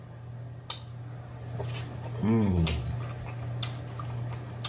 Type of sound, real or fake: real